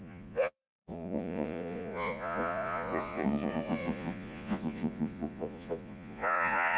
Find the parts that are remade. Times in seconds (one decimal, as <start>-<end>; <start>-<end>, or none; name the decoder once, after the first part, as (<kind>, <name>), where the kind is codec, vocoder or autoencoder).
0.0-6.8 (vocoder, Vocos)